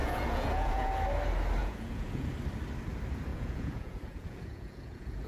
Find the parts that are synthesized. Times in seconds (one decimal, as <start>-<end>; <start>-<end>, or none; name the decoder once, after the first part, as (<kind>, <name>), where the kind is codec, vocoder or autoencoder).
0.0-0.9 (vocoder, Vocos); 1.6-2.3; 3.3-5.3